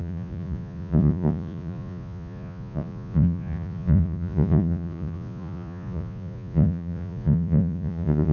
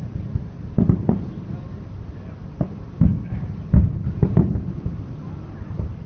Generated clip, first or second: first